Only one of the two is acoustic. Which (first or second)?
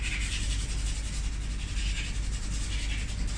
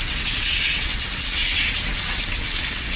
first